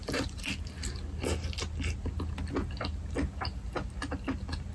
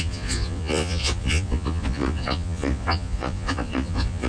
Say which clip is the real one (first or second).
first